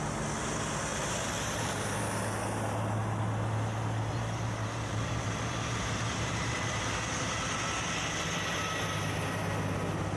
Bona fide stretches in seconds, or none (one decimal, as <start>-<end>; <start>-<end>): 0.0-0.9; 2.0-4.1; 7.2-10.2

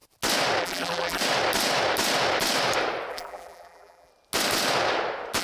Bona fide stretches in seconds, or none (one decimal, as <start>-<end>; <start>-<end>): 0.0-0.6; 1.2-3.1; 4.1-5.4

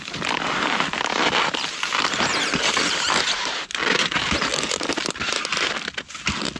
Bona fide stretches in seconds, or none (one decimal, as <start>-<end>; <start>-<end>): 0.0-2.3; 4.5-6.6

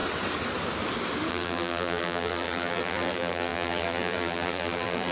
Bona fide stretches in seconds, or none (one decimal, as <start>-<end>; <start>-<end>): 0.0-1.3

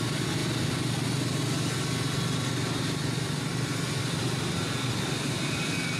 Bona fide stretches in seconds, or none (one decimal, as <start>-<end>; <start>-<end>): 0.4-4.0

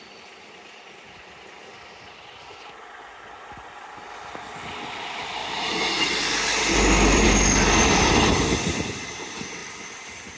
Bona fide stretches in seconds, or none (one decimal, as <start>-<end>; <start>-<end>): 0.0-5.4; 7.4-9.6